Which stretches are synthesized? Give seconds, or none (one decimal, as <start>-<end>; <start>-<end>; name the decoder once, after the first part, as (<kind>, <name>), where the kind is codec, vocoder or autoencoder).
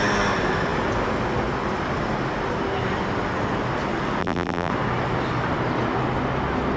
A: 4.2-4.7 (vocoder, BigVGAN v2)